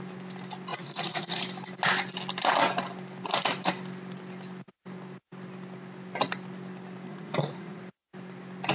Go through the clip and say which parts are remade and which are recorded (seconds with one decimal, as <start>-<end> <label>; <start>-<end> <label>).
0.0-0.7 recorded; 0.7-1.4 remade; 1.4-7.1 recorded; 7.1-7.8 remade; 7.8-8.7 recorded